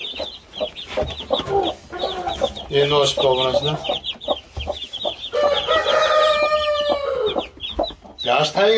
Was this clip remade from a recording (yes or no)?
no